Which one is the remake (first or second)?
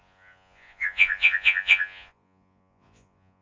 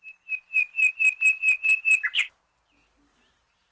first